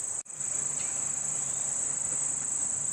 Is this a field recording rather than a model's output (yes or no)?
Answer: yes